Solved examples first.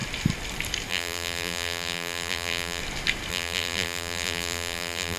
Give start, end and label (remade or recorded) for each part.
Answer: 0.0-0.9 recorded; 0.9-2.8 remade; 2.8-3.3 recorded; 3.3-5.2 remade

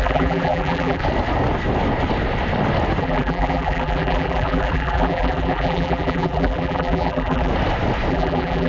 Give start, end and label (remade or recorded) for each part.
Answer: 0.0-1.0 remade; 1.0-3.0 recorded; 3.0-7.5 remade; 7.5-8.1 recorded; 8.1-8.7 remade

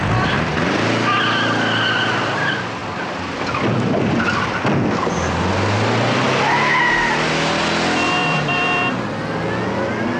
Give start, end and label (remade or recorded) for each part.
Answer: 0.0-8.2 recorded; 8.2-9.1 remade; 9.1-10.2 recorded

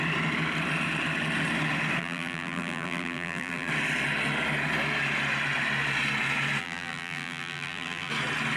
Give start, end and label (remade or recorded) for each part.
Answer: 0.0-2.0 recorded; 2.0-3.7 remade; 3.7-6.6 recorded; 6.6-8.1 remade; 8.1-8.6 recorded

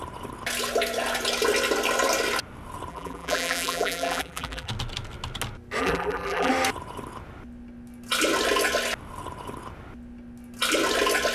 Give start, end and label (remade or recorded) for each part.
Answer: 0.0-2.9 recorded; 2.9-4.7 remade; 4.7-5.8 recorded; 5.8-6.5 remade; 6.5-11.3 recorded